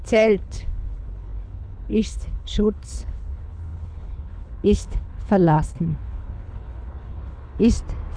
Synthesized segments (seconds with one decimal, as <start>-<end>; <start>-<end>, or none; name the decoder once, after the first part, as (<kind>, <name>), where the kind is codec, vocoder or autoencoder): 0.0-7.6 (codec, HILCodec)